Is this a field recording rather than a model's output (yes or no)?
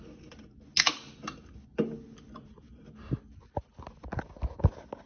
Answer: yes